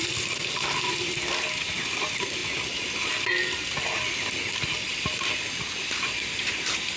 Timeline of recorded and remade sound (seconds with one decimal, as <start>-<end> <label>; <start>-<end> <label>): 0.0-7.0 recorded